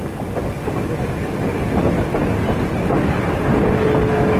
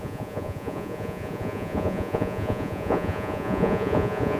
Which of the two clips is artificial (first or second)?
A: second